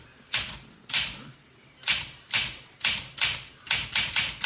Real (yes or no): yes